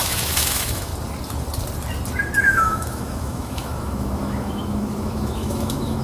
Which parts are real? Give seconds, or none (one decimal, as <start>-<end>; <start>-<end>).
0.9-2.4